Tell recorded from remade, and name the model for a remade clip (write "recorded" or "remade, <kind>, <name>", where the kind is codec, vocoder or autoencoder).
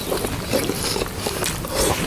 remade, vocoder, BigVGAN v2